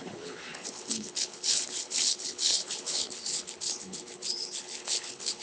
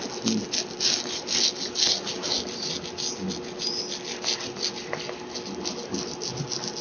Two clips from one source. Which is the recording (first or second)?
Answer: second